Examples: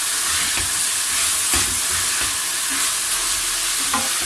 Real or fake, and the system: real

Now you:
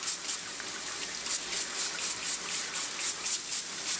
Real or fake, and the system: real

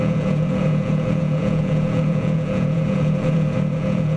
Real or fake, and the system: fake, vocoder, Vocos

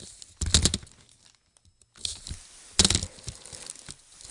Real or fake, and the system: real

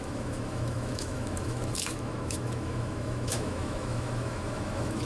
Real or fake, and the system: fake, autoencoder, DAC-VAE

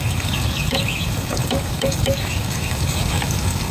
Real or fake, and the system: fake, codec, DAC